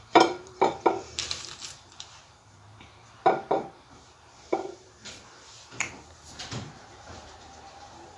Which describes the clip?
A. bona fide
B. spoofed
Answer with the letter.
B